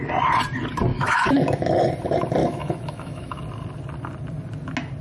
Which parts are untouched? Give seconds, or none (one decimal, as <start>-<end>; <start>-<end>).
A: 0.0-0.9; 1.9-2.4; 3.4-5.0